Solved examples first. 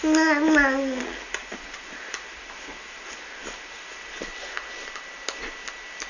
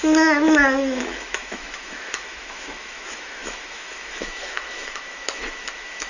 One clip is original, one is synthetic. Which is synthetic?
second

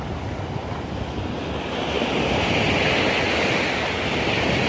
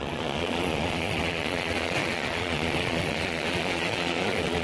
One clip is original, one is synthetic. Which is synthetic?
second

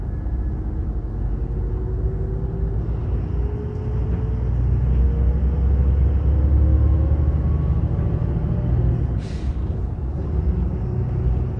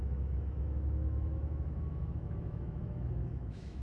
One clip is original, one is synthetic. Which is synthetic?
second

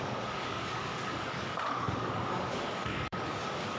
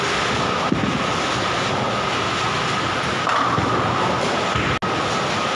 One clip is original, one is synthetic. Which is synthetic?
first